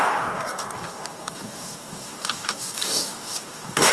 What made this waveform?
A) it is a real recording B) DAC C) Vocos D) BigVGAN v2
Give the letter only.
B